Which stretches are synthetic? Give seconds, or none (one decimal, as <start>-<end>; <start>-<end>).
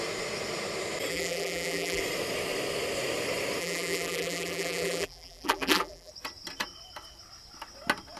1.1-2.0; 3.6-6.1